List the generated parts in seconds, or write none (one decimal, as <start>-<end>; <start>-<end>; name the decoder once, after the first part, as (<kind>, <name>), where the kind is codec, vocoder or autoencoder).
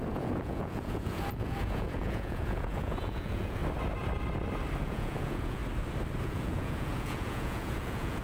0.0-3.6 (vocoder, Vocos); 4.8-5.6; 6.2-8.2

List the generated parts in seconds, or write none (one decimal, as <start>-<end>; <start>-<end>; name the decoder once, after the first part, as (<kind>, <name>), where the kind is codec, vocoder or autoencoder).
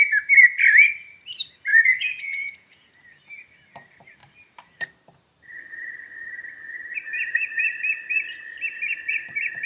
1.7-2.9 (vocoder, Vocos)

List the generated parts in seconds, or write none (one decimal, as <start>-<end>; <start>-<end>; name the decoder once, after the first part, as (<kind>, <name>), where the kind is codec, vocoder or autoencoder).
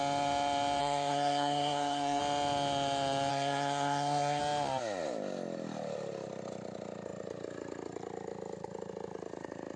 0.8-2.2 (codec, SNAC); 3.3-4.4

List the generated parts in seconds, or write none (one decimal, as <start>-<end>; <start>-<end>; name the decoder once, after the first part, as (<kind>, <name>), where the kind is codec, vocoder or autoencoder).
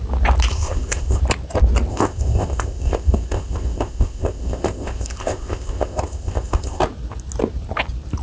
0.5-1.2 (codec, ZipCodec); 1.9-6.8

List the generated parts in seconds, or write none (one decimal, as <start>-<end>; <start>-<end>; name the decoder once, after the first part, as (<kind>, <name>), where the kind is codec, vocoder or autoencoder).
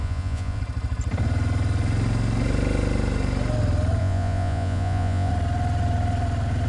0.0-0.6 (vocoder, Vocos); 4.0-5.3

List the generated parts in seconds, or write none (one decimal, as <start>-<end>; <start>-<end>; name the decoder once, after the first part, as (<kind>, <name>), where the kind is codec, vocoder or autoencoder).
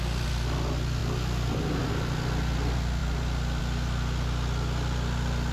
none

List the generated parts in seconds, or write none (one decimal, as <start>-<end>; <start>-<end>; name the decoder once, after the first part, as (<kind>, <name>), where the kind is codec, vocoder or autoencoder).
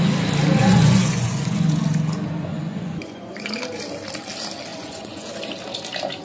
0.6-1.8 (vocoder, Vocos); 2.5-3.5; 4.7-5.3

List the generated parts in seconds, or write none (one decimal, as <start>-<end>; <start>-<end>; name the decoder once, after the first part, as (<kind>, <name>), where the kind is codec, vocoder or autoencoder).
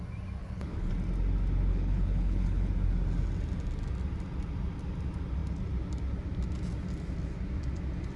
0.4-0.9 (codec, HILCodec); 1.7-2.7